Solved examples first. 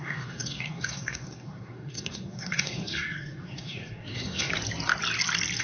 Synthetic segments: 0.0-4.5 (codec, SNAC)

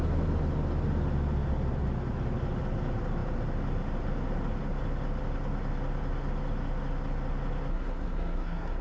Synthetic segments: 7.7-8.8 (codec, SNAC)

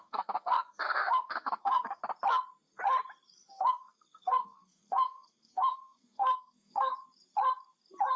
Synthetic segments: 0.0-2.0 (codec, SNAC); 3.5-6.9

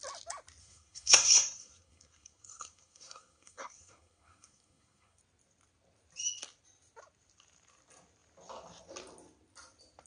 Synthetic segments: 0.6-5.2 (codec, SNAC)

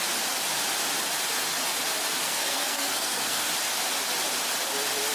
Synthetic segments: 2.2-3.5 (codec, SNAC)

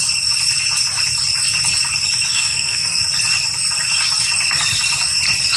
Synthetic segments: 2.3-3.0 (codec, SNAC)

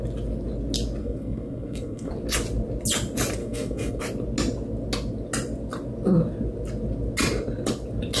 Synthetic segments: 1.0-2.1 (codec, SNAC); 3.4-4.0

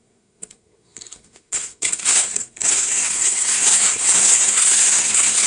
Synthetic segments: 0.0-5.5 (codec, SNAC)